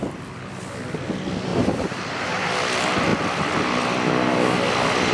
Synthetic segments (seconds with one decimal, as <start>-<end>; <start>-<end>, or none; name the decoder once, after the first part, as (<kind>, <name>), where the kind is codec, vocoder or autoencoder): 1.5-2.5 (vocoder, BigVGAN v2)